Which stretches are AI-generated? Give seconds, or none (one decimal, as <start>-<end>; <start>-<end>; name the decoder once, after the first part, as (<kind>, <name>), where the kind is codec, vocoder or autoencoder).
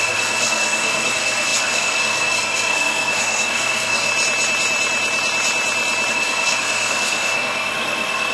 0.0-4.1 (codec, SNAC); 6.1-8.3